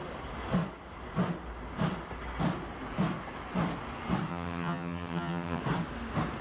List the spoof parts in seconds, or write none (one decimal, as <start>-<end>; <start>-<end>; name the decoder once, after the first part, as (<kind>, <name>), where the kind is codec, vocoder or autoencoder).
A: 4.3-5.6 (vocoder, HiFi-GAN)